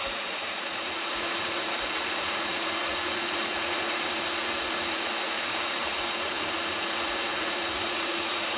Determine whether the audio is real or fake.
fake